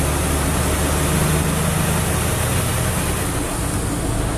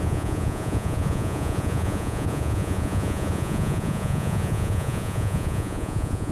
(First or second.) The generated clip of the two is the second